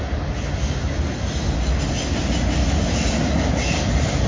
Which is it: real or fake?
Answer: real